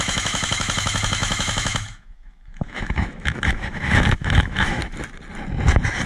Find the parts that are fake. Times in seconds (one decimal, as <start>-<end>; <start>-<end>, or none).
0.0-4.8